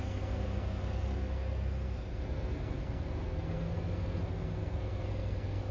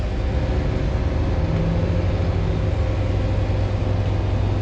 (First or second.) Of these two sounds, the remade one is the first